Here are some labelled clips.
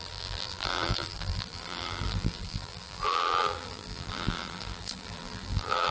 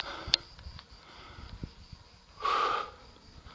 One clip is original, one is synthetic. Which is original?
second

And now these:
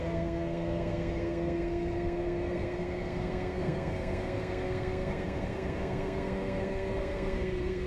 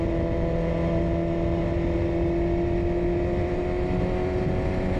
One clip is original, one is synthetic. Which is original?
second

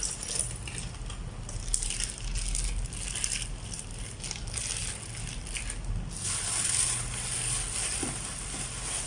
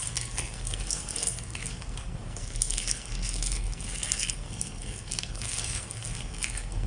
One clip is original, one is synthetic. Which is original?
first